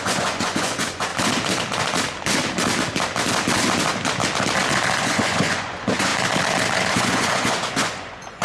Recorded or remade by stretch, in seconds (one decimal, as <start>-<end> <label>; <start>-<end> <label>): 0.0-1.1 remade; 1.1-5.0 recorded; 5.0-6.1 remade; 6.1-6.9 recorded; 6.9-8.4 remade